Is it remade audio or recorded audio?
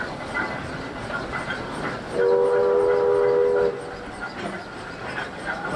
recorded